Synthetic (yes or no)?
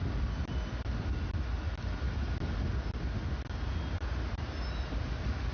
no